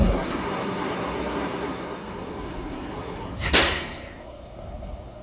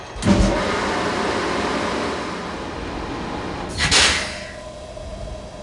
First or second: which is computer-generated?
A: first